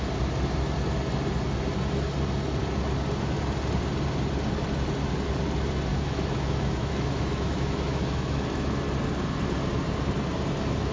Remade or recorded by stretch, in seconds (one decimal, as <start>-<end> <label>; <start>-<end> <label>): 0.0-5.9 recorded; 5.9-8.8 remade; 8.8-10.9 recorded